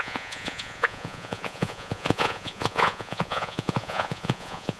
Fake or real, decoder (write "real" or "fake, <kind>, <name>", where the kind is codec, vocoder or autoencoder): fake, vocoder, Vocos